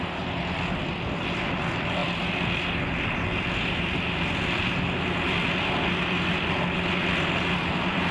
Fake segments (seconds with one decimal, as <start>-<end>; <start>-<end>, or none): none